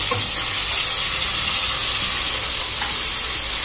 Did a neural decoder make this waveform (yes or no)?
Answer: no